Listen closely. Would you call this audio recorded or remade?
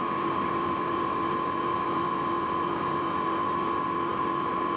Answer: remade